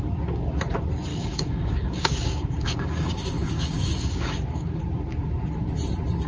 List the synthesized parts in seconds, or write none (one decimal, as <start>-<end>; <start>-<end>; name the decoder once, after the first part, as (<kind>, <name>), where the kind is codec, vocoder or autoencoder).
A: 1.1-4.8 (codec, DAC)